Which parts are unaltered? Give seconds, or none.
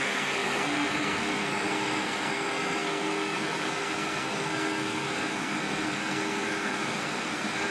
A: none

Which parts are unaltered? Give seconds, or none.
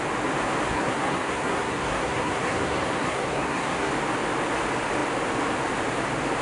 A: 0.0-0.7; 3.9-6.4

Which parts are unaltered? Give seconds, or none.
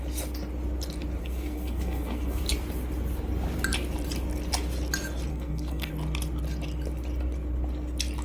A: 0.0-1.2; 2.4-5.3; 5.9-8.2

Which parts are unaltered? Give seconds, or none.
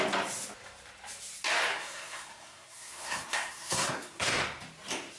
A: 0.0-1.7; 4.4-5.2